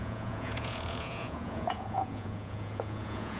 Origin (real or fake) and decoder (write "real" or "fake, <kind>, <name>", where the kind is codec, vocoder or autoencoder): fake, vocoder, Vocos